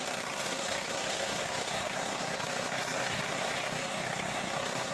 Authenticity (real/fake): fake